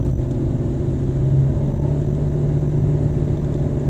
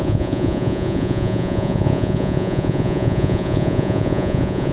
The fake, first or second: second